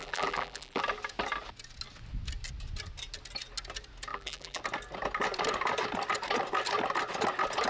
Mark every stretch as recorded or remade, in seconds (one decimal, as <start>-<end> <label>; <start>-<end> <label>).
0.0-0.8 remade; 0.8-4.1 recorded; 4.1-4.6 remade; 4.6-7.7 recorded